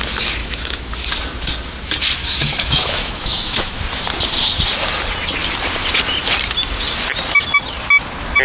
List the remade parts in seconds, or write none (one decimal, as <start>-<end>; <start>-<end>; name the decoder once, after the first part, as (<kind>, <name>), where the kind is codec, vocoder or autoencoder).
0.4-0.9 (autoencoder, DAC-VAE); 2.2-3.8